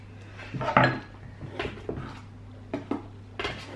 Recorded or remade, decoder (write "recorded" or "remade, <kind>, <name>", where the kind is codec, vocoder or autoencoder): recorded